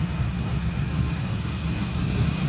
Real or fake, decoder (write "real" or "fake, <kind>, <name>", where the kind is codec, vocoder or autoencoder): fake, codec, SNAC